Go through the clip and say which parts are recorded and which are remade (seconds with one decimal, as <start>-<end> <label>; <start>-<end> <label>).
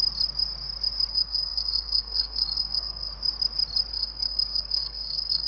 0.0-1.1 recorded; 1.1-3.1 remade; 3.1-3.9 recorded; 3.9-5.5 remade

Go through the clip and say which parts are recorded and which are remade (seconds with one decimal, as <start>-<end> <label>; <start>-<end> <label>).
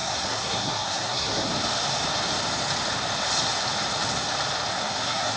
0.0-1.5 remade; 1.5-4.7 recorded; 4.7-5.4 remade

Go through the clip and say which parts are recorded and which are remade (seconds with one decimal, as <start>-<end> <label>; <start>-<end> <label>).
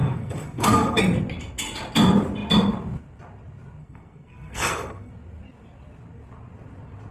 0.0-1.0 remade; 1.0-3.8 recorded; 3.8-5.1 remade; 5.1-7.1 recorded